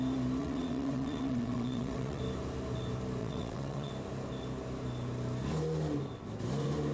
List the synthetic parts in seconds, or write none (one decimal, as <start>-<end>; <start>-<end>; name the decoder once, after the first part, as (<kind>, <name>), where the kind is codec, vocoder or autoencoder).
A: 0.4-2.2 (vocoder, WaveNeXt); 3.2-3.9